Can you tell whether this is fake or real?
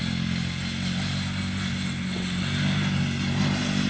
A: real